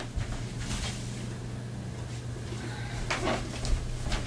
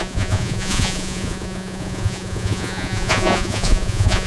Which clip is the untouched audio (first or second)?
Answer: first